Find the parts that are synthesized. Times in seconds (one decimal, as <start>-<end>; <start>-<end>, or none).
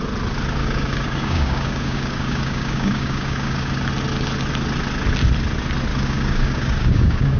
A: 0.6-3.7; 5.9-7.4